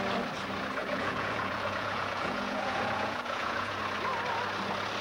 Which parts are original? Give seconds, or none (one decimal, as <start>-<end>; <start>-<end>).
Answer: 0.0-0.8; 3.8-5.0